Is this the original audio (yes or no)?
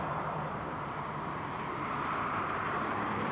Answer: no